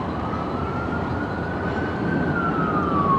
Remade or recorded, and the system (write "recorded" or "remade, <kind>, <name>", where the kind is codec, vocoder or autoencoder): recorded